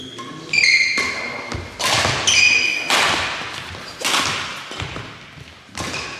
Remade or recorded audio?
recorded